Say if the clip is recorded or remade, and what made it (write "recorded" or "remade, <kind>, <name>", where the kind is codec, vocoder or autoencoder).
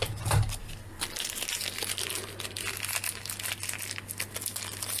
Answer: recorded